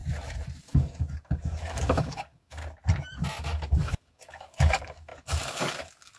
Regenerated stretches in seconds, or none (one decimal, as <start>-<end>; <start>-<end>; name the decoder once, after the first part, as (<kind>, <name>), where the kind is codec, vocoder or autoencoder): 0.6-2.6 (codec, DAC); 3.4-6.2